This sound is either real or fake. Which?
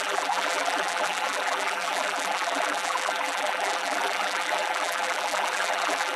fake